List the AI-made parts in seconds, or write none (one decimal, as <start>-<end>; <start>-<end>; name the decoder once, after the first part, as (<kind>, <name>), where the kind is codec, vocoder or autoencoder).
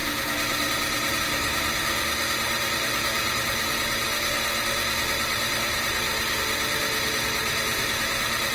none